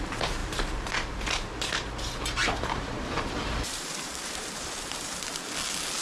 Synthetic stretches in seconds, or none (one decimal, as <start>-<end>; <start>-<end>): 0.4-0.9; 2.4-5.3